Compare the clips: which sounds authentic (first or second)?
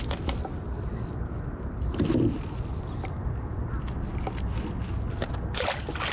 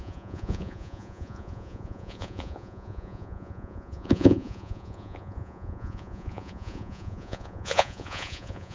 first